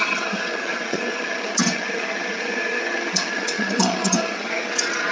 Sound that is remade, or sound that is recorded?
remade